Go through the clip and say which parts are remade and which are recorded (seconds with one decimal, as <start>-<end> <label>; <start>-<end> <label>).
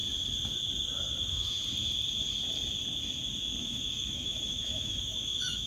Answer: 0.0-1.2 recorded; 1.2-1.6 remade; 1.6-3.6 recorded; 3.6-5.7 remade